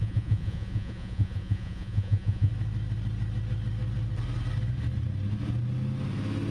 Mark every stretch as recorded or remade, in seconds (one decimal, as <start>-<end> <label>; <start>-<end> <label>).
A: 0.0-2.5 remade; 2.5-6.5 recorded